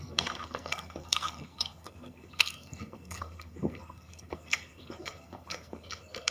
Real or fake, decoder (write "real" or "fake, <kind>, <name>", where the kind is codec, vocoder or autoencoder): fake, codec, SNAC